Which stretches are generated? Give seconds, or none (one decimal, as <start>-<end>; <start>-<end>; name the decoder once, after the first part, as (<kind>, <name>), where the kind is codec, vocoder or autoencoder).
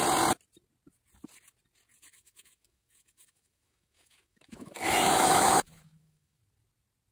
2.1-6.4 (autoencoder, DAC-VAE)